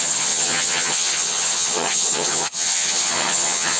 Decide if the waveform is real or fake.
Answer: fake